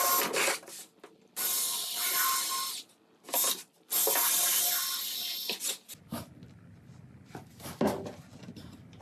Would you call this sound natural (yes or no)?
yes